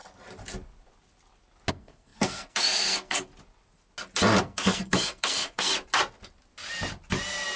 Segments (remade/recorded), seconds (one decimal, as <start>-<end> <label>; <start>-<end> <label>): 0.0-1.7 recorded; 1.7-3.3 remade; 3.3-4.4 recorded; 4.4-5.7 remade; 5.7-7.6 recorded